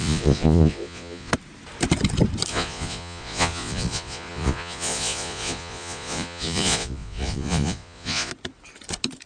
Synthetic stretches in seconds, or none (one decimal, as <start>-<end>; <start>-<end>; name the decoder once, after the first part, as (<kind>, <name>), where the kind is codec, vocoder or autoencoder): 0.0-1.3 (vocoder, Vocos); 2.5-8.3